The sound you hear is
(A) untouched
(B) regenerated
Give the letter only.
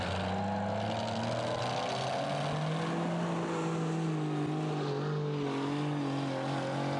A